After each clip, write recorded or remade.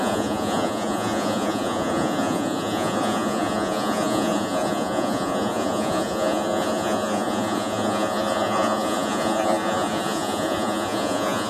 remade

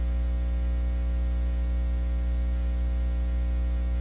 recorded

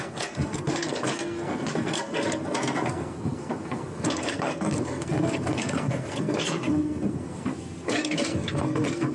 remade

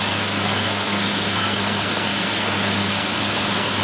remade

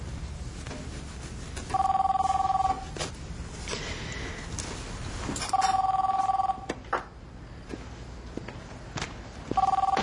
recorded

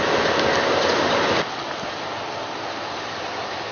recorded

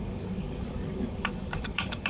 remade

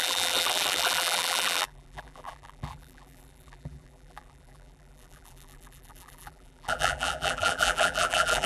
remade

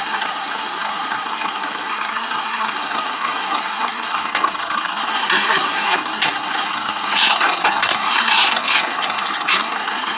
remade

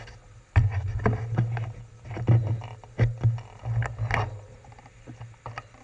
recorded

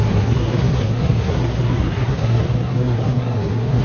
remade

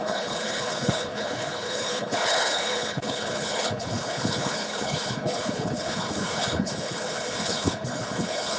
remade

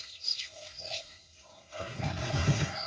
remade